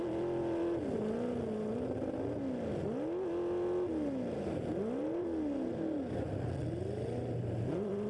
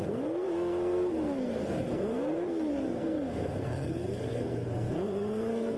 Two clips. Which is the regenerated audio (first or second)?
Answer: second